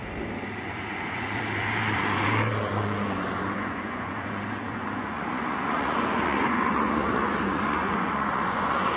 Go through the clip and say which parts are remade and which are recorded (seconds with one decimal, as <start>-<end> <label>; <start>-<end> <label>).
0.0-0.6 recorded; 0.6-9.0 remade